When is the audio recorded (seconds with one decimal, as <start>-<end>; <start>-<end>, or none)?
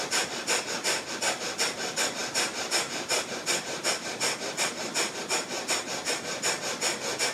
0.0-7.3